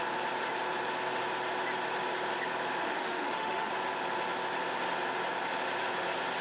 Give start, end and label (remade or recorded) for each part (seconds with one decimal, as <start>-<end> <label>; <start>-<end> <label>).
0.0-2.8 recorded; 2.8-3.7 remade; 3.7-6.4 recorded